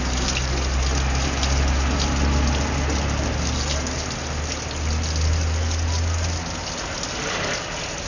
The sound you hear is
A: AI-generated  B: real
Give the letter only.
B